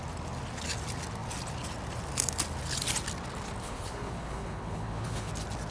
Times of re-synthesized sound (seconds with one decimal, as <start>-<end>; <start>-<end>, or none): 3.6-5.3